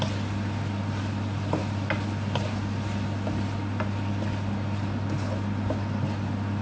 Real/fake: real